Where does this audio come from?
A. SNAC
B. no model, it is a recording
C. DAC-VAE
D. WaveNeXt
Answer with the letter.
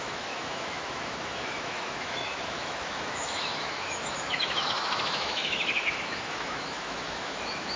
C